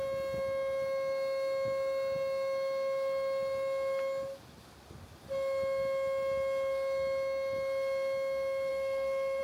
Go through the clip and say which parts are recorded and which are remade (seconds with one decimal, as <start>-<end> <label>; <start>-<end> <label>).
0.0-8.7 recorded; 8.7-9.4 remade